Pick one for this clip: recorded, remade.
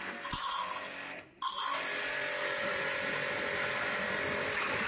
recorded